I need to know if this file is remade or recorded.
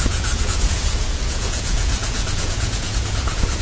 remade